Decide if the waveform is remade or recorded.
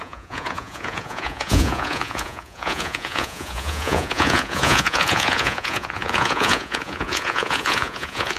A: remade